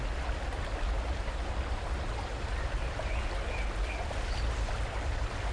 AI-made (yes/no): no